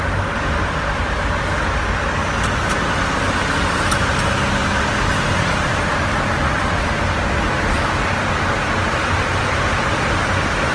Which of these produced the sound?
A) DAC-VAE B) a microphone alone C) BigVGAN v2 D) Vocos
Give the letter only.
B